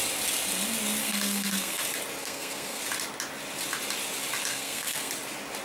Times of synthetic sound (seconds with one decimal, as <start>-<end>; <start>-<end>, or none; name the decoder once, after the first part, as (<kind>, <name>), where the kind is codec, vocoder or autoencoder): 1.0-1.8 (codec, SNAC); 2.2-2.8; 4.5-5.1